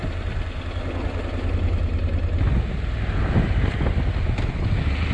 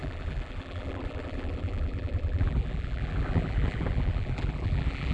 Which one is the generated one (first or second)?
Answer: second